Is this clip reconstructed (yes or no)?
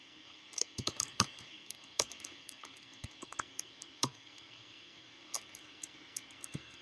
yes